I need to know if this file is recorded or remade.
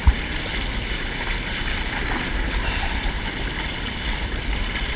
recorded